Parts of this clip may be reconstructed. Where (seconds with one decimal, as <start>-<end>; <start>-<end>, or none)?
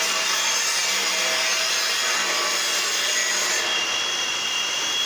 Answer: none